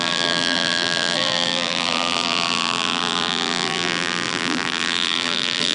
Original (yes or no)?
no